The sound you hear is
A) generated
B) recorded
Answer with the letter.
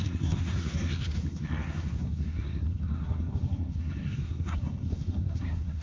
A